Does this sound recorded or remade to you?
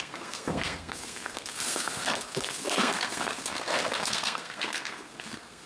remade